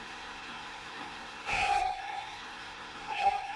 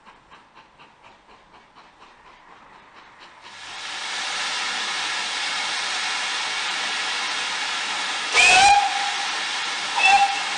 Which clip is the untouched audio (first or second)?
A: second